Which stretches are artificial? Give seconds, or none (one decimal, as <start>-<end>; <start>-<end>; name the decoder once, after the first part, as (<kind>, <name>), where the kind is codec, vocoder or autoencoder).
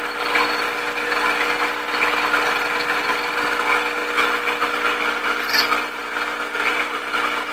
none